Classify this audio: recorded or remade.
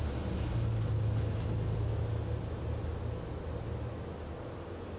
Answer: recorded